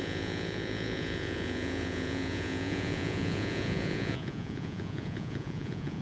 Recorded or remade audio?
remade